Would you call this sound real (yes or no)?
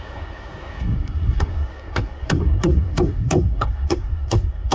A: no